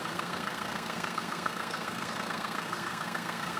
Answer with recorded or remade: remade